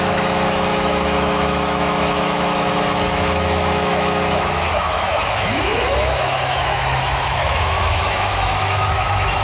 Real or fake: fake